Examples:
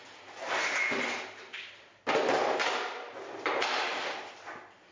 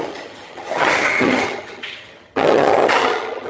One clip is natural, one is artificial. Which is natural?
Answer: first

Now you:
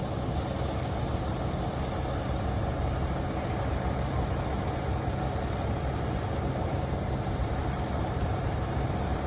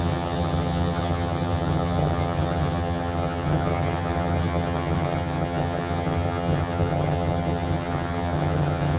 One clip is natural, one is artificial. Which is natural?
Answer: first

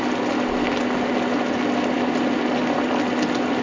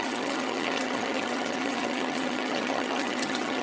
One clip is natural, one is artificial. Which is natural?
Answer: first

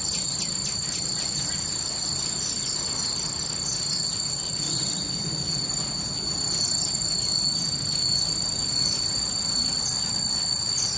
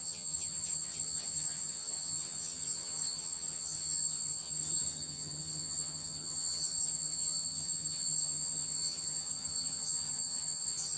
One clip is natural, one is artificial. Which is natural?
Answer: first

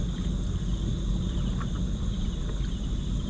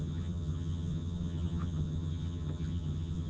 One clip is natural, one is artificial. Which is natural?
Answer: first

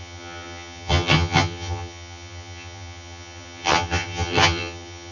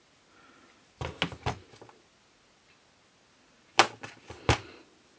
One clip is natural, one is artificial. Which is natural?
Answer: second